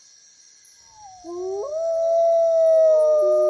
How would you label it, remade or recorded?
recorded